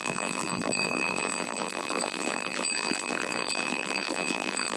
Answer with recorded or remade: remade